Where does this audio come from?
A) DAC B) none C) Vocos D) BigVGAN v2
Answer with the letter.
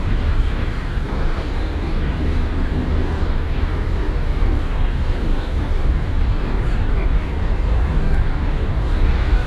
A